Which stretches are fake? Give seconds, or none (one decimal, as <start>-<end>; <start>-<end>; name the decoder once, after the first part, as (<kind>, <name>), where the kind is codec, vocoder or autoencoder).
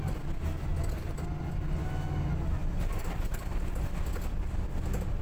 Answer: none